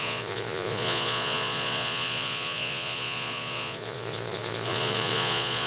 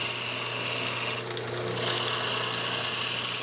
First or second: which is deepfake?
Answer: first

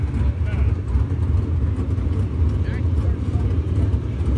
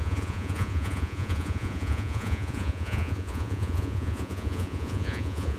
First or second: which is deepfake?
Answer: second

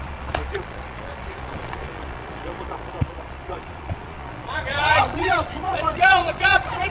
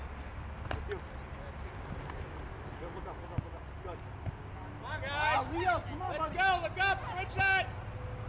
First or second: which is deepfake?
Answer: first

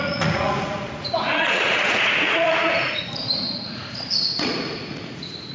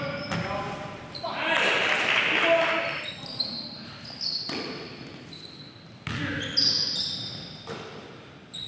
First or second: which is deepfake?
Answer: first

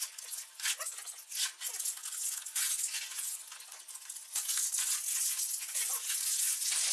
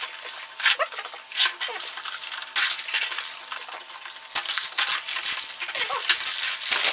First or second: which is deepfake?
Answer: first